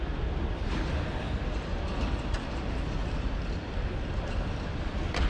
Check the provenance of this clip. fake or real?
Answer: real